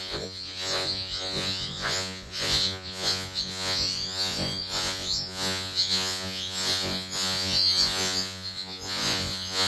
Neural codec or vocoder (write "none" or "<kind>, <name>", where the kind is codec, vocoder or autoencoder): vocoder, Vocos